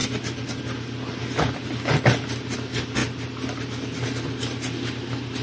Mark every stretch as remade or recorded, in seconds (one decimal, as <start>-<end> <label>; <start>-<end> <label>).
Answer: 0.0-5.4 recorded